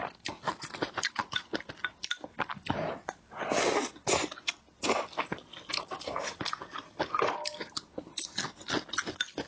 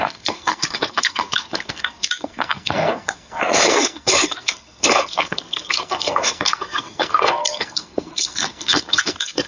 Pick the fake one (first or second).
second